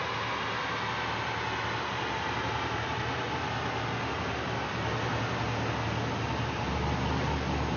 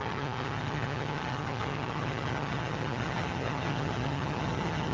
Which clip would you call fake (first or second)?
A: second